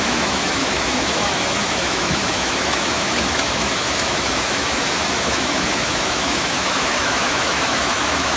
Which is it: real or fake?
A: fake